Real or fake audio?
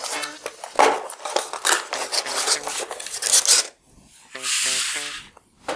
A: real